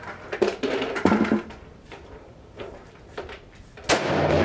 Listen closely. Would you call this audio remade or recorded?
recorded